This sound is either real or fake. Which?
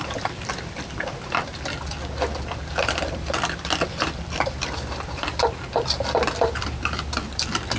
fake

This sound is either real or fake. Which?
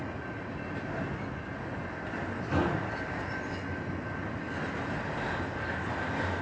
real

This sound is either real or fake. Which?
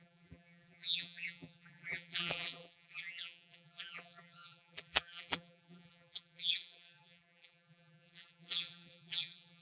fake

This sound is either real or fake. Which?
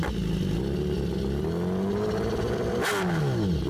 real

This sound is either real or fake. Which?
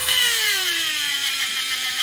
fake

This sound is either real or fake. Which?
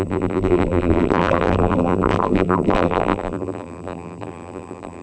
fake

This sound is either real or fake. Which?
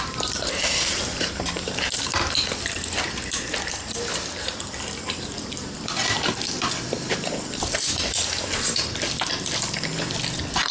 fake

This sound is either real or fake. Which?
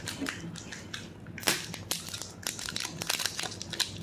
real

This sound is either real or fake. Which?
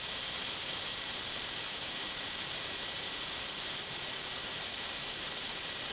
fake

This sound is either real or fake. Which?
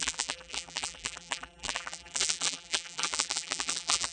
fake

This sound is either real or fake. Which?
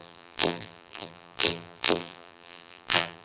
fake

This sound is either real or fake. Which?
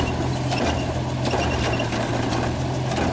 real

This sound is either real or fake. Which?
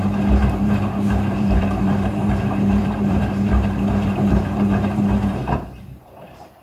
fake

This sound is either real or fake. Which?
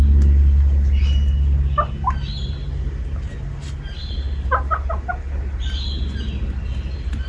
real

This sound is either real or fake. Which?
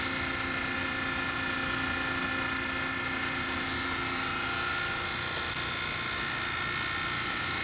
real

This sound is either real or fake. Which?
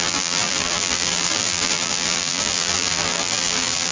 fake